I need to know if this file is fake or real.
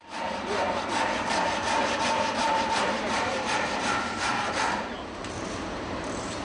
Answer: fake